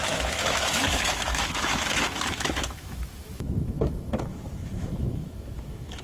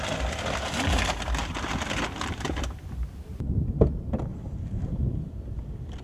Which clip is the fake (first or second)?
first